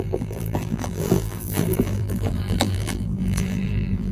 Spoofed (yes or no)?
yes